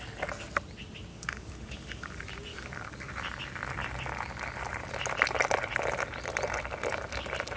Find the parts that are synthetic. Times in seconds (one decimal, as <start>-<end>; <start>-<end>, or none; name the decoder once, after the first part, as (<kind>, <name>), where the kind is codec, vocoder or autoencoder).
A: 1.1-2.1 (codec, DAC); 2.5-3.1